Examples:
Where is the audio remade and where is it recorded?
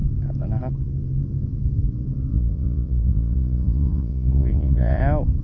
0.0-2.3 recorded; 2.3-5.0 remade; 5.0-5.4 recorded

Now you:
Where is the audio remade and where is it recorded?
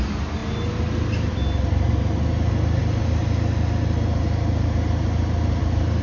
0.0-6.0 recorded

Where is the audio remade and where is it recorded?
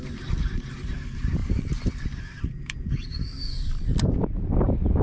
0.0-5.0 recorded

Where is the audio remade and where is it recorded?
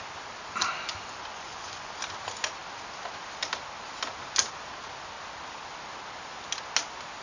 0.0-1.3 recorded; 1.3-1.9 remade; 1.9-7.2 recorded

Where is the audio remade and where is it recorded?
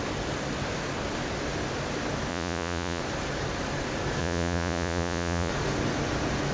0.0-2.3 recorded; 2.3-3.0 remade; 3.0-4.2 recorded; 4.2-5.5 remade; 5.5-6.5 recorded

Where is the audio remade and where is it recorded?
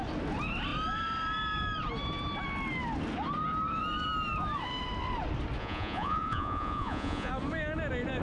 0.0-5.6 recorded; 5.6-7.3 remade; 7.3-8.2 recorded